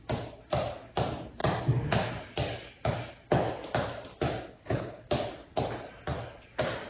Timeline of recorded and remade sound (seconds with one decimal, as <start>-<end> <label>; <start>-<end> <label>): 0.0-4.5 recorded; 4.5-5.1 remade; 5.1-6.9 recorded